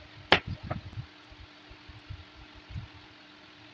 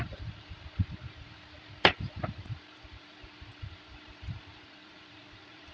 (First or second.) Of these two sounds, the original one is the first